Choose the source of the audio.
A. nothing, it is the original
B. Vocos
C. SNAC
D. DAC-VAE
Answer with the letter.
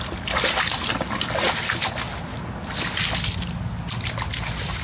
A